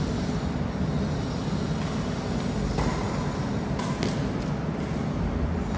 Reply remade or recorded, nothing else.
recorded